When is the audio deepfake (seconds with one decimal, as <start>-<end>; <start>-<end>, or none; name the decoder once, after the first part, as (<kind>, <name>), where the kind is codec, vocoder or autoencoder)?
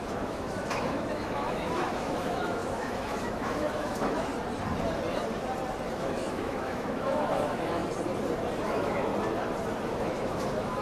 0.0-4.3 (autoencoder, DAC-VAE); 5.9-7.8; 8.6-9.1; 9.8-10.8